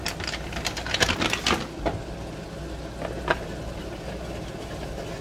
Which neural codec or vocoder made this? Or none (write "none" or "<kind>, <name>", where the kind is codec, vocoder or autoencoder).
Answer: none